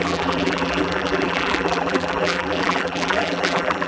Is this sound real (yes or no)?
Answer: no